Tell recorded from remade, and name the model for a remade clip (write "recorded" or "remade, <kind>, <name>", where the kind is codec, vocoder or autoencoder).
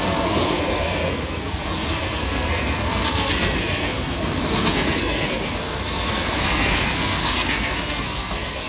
remade, codec, SNAC